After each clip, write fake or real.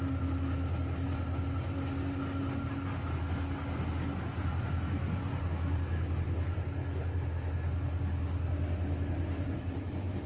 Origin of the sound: real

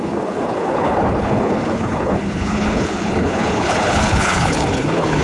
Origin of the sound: fake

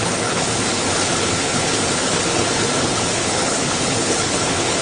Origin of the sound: fake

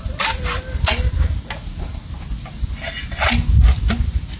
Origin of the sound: real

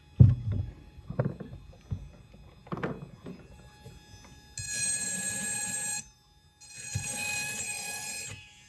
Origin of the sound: real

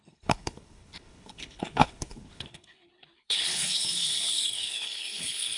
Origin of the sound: fake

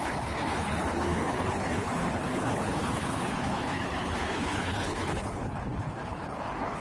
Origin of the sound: fake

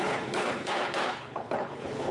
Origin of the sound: fake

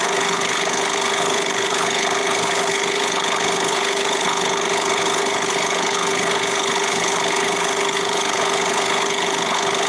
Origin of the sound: fake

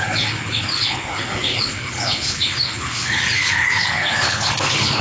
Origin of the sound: fake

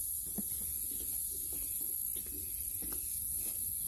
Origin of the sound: real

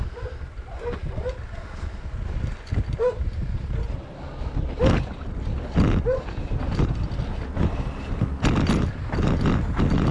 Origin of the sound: real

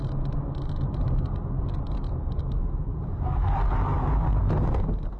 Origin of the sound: real